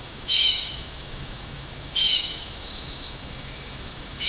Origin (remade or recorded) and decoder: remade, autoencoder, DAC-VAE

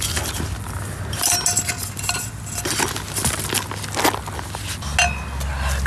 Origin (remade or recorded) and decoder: recorded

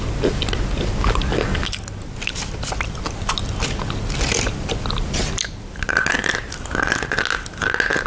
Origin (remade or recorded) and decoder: recorded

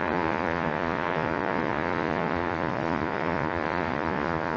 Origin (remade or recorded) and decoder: remade, vocoder, Vocos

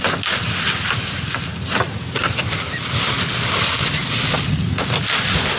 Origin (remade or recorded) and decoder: recorded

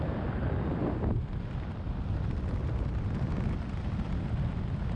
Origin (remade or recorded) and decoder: recorded